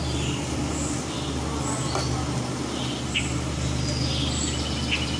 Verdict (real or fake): real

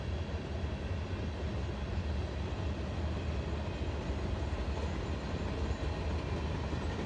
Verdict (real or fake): real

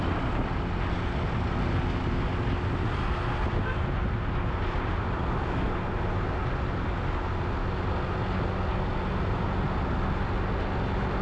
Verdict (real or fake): real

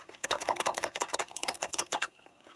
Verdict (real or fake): fake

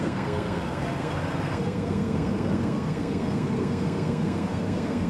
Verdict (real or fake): fake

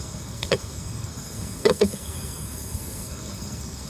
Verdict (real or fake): fake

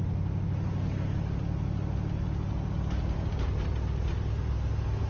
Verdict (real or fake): real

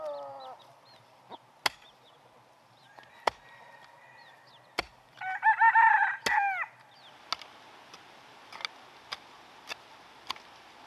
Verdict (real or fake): real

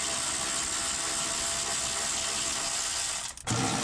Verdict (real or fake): real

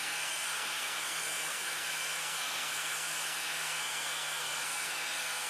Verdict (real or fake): fake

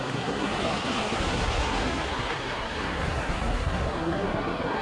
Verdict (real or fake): fake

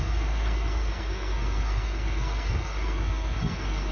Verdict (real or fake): fake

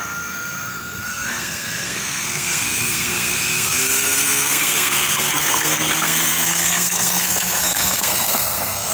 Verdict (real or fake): fake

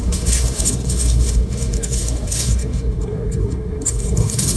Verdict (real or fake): fake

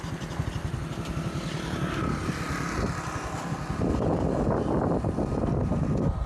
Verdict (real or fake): real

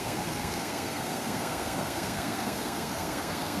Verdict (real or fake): fake